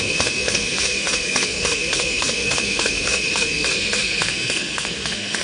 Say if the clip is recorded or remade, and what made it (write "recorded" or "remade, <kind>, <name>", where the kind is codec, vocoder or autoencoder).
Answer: remade, codec, SNAC